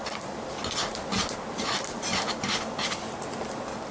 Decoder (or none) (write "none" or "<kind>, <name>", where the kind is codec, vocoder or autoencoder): none